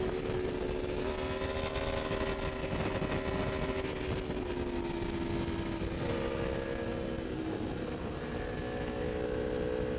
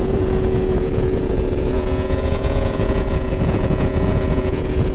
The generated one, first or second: second